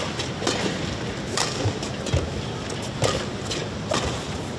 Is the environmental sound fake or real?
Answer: real